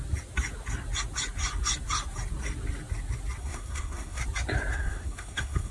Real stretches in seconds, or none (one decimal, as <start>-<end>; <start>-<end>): 0.0-3.4; 4.2-4.7

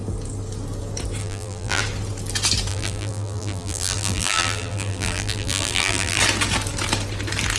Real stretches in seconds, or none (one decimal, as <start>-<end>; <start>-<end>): 0.0-1.2; 1.8-2.7; 6.2-7.6

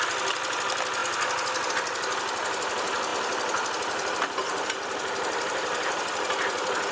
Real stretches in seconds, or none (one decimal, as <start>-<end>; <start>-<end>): 0.0-6.9